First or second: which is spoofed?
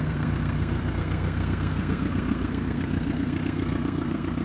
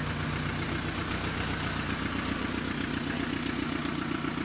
first